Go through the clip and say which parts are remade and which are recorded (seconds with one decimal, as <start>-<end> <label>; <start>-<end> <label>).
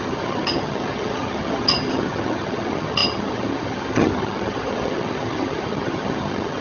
0.0-6.6 remade